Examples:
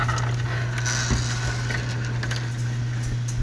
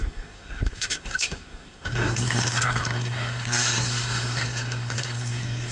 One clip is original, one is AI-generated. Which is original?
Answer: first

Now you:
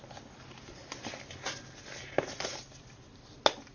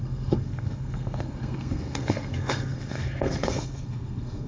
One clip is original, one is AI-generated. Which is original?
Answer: first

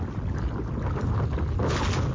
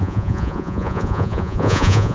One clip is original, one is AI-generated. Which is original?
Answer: first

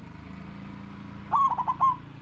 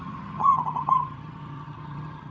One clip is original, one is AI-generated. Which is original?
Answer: first